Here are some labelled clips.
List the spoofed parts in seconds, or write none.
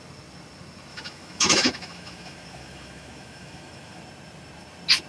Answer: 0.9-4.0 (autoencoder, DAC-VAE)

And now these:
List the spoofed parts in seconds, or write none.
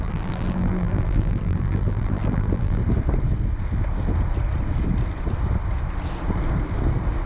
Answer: 0.0-2.8 (vocoder, BigVGAN v2)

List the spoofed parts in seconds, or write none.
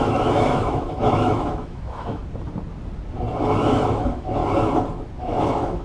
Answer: 0.0-2.2 (autoencoder, DAC-VAE); 3.6-4.4; 5.2-5.8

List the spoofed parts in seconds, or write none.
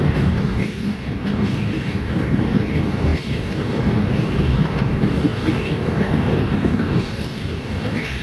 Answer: 0.0-8.2 (codec, DAC)